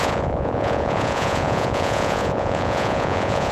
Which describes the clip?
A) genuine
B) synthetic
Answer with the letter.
B